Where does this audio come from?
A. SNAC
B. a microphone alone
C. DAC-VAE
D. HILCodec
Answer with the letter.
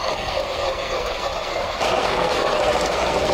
A